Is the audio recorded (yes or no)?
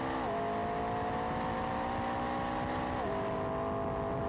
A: yes